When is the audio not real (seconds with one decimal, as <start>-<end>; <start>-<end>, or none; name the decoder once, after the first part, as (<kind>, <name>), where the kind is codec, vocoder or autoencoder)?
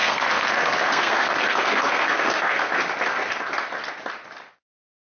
0.0-2.7 (codec, SNAC)